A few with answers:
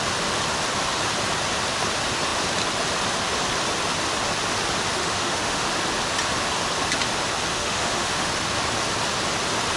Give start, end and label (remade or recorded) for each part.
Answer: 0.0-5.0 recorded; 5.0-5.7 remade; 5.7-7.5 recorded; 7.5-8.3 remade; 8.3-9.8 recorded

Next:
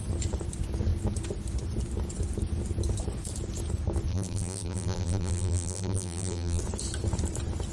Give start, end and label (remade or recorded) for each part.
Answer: 0.0-4.1 recorded; 4.1-6.6 remade; 6.6-7.7 recorded

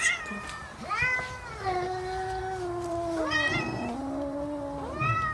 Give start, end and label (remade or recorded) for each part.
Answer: 0.0-5.3 recorded

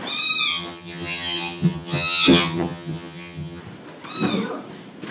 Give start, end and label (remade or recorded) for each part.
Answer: 0.0-0.5 recorded; 0.5-3.6 remade; 3.6-5.1 recorded

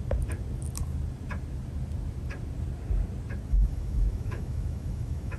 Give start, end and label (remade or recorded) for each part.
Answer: 0.0-3.5 recorded; 3.5-5.4 remade

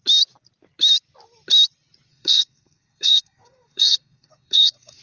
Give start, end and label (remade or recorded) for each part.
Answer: 0.0-2.1 recorded; 2.1-5.0 remade

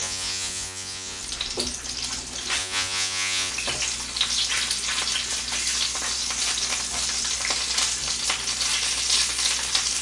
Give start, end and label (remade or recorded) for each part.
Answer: 0.0-1.2 remade; 1.2-2.6 recorded; 2.6-3.5 remade; 3.5-10.0 recorded